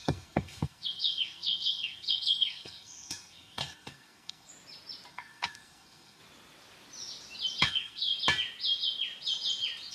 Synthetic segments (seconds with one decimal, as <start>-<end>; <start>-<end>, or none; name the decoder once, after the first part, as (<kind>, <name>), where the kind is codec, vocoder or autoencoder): 0.0-4.5 (codec, SNAC); 5.1-6.2; 7.6-8.1